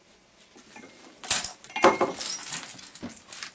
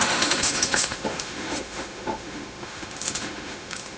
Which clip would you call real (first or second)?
first